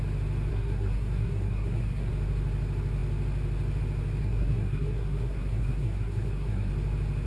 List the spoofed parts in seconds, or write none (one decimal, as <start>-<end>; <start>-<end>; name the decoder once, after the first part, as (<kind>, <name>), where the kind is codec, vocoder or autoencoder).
0.5-2.1 (codec, SNAC); 4.2-6.7